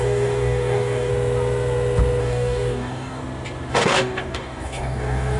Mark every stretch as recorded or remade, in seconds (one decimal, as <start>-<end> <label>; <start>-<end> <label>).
0.0-1.1 remade; 1.1-2.2 recorded; 2.2-3.2 remade; 3.2-3.7 recorded; 3.7-5.4 remade